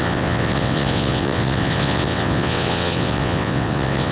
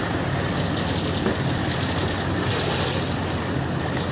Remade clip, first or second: first